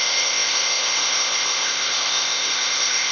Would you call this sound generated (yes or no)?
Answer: yes